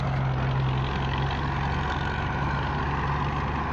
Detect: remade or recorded recorded